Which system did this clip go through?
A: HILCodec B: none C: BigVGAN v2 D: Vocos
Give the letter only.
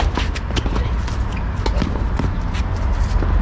B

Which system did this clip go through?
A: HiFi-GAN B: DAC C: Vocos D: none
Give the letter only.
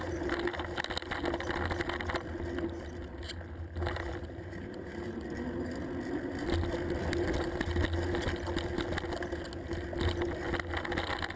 D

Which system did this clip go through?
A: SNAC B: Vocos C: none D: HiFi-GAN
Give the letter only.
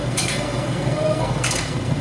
A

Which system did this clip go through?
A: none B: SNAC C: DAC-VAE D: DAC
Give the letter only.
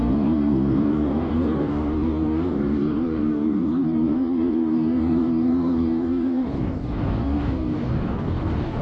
D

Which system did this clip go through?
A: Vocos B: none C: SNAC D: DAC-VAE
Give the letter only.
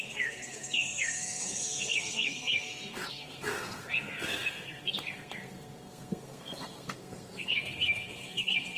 C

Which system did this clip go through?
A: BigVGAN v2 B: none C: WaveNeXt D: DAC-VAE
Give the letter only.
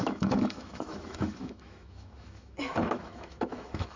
D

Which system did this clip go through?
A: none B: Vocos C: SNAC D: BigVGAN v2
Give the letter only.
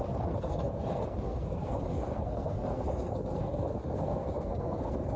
C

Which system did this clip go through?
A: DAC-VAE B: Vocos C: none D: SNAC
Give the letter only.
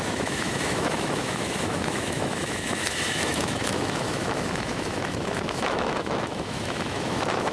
A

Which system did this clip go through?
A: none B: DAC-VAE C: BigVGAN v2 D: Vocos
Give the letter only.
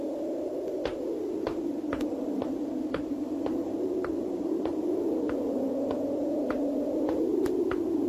A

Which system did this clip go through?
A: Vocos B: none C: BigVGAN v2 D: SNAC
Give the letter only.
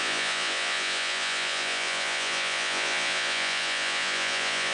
A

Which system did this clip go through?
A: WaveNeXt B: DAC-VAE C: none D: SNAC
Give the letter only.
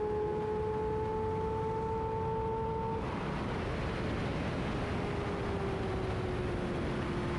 C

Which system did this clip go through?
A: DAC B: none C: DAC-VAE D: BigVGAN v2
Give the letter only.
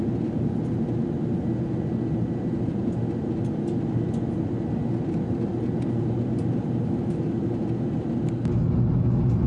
B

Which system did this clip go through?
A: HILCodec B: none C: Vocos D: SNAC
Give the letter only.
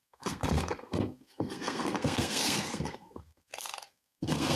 D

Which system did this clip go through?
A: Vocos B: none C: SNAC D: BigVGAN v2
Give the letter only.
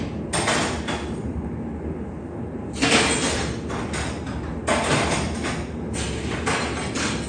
B